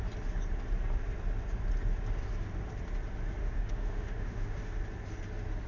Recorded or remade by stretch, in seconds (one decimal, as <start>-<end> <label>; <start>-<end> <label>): 0.0-3.4 recorded; 3.4-4.6 remade; 4.6-5.7 recorded